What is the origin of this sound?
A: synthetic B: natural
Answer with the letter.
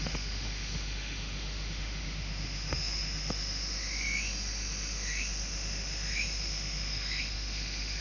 A